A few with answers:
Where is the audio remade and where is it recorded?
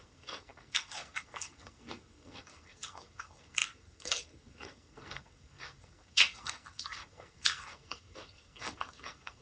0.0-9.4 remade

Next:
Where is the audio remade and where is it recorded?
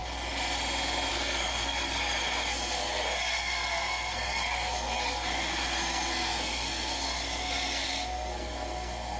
0.0-1.1 recorded; 1.1-9.2 remade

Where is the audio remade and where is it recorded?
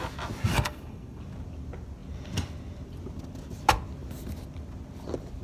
0.0-0.5 recorded; 0.5-1.2 remade; 1.2-5.4 recorded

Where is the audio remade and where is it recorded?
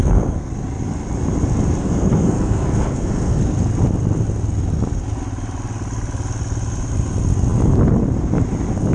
0.0-0.5 remade; 0.5-1.8 recorded; 1.8-3.4 remade; 3.4-8.9 recorded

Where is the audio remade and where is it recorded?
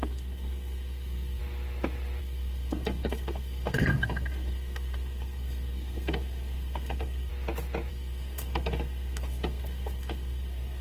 0.0-1.4 remade; 1.4-2.2 recorded; 2.2-7.3 remade; 7.3-7.9 recorded; 7.9-10.8 remade